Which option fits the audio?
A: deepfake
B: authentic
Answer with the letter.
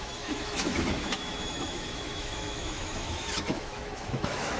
A